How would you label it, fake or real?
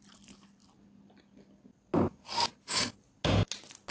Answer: real